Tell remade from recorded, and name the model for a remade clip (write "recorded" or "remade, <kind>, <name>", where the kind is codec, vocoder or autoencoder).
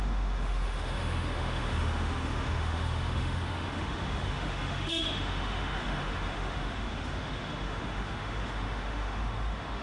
remade, autoencoder, DAC-VAE